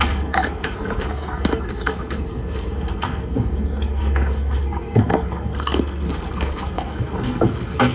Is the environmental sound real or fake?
fake